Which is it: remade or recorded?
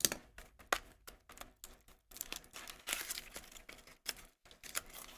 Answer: recorded